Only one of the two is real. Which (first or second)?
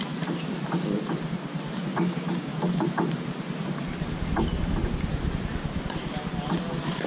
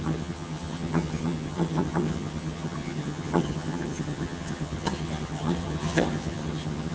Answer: first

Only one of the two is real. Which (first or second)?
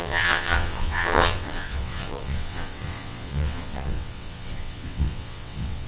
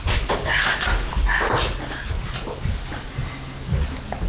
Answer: second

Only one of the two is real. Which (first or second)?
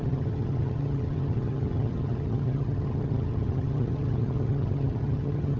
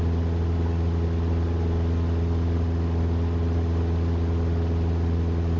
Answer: second